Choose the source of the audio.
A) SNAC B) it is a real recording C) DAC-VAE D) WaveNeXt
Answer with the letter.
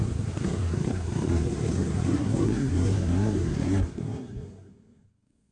A